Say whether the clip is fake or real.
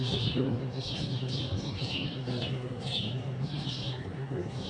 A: fake